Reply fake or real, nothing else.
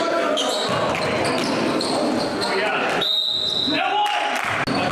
real